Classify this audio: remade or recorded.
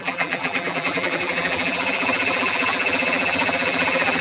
remade